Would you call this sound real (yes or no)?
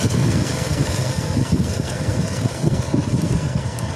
no